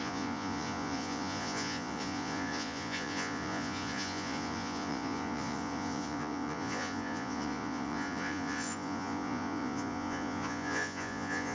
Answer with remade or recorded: remade